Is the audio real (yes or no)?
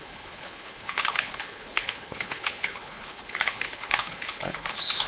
no